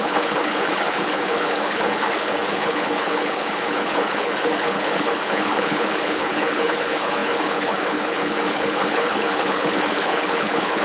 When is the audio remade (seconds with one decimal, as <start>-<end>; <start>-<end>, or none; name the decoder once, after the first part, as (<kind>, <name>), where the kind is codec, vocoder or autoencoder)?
0.0-10.8 (codec, HILCodec)